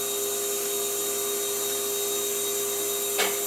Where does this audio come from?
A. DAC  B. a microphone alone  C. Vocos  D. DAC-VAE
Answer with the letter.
B